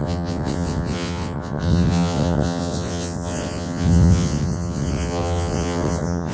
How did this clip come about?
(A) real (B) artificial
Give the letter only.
B